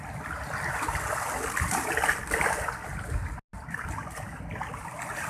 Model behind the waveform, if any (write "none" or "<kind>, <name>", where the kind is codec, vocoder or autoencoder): none